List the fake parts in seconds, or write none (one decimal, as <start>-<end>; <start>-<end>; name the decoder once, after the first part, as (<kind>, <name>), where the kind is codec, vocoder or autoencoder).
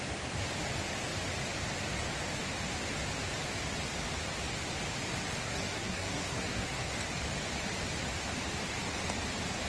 5.4-6.9 (codec, SNAC)